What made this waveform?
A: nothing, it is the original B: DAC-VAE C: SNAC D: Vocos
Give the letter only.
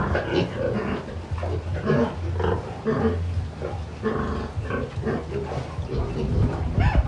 A